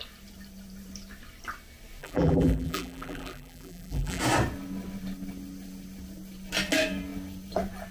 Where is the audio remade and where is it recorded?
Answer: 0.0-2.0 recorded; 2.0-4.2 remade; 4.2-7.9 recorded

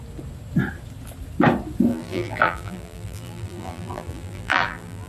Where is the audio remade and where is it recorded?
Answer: 0.0-1.9 recorded; 1.9-5.1 remade

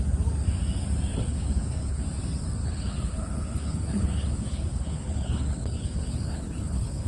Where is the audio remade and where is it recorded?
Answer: 0.0-1.1 recorded; 1.1-2.0 remade; 2.0-2.6 recorded; 2.6-7.1 remade

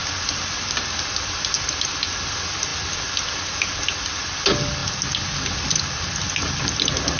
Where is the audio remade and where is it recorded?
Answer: 0.0-7.2 recorded

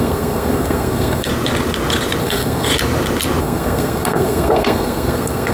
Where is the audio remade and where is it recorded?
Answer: 0.0-1.3 remade; 1.3-2.2 recorded; 2.2-2.7 remade; 2.7-3.4 recorded; 3.4-5.5 remade

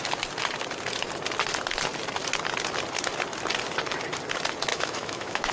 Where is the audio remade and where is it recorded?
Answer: 0.0-4.7 recorded; 4.7-5.5 remade